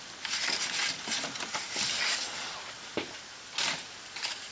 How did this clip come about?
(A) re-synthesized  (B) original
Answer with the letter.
B